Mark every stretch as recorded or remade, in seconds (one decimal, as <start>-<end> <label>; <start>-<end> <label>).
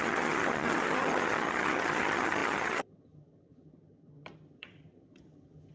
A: 0.0-5.7 remade